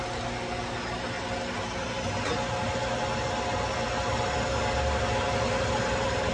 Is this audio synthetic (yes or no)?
no